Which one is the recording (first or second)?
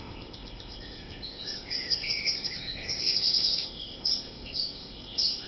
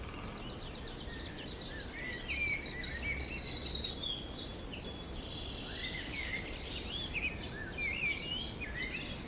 second